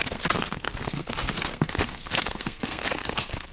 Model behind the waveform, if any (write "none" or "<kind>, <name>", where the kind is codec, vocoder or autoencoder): codec, SNAC